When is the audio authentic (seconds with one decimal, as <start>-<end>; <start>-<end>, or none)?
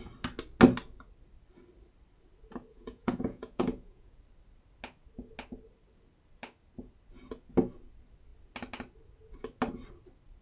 0.0-2.7; 4.2-10.4